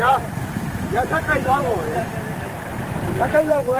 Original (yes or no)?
no